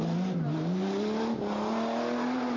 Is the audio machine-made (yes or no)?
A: no